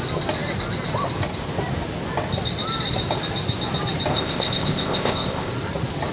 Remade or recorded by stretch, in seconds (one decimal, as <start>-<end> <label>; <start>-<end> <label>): 0.0-4.1 recorded; 4.1-5.5 remade; 5.5-6.1 recorded